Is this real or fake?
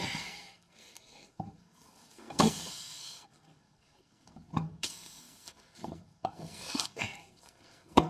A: fake